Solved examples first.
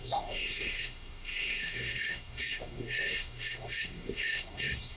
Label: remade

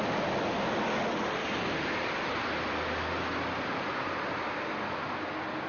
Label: recorded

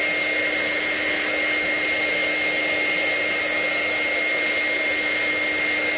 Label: recorded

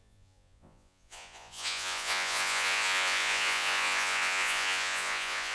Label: remade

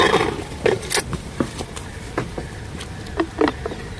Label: recorded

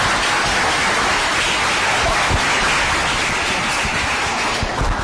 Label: recorded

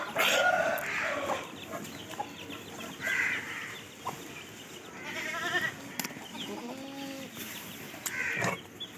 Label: recorded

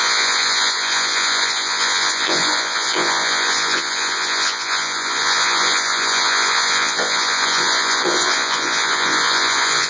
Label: remade